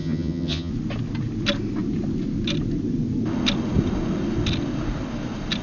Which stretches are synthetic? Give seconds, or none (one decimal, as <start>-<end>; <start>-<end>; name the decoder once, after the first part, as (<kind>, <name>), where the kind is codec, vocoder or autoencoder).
0.0-0.7 (vocoder, HiFi-GAN)

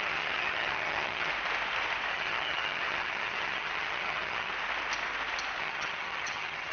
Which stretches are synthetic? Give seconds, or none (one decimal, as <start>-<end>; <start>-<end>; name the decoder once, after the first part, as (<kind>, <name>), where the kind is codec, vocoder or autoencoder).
0.0-1.3 (vocoder, HiFi-GAN); 2.1-4.5; 5.6-6.7